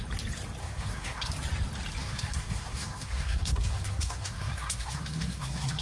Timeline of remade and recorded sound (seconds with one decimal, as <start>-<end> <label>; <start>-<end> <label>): 0.0-0.6 recorded; 0.6-1.3 remade; 1.3-2.0 recorded; 2.0-5.8 remade